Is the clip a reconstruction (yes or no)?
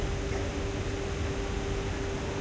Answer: no